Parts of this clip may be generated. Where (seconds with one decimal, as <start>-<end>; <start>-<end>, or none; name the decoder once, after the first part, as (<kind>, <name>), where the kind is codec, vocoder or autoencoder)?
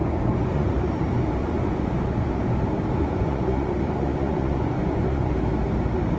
0.0-0.9 (vocoder, Vocos); 1.4-2.3; 3.0-5.3